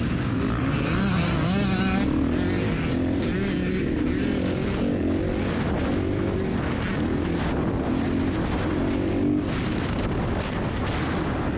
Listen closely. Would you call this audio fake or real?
real